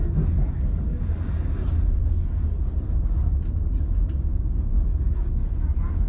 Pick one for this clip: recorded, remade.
recorded